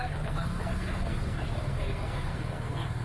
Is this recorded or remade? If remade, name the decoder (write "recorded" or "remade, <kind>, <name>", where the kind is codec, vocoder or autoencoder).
remade, codec, SNAC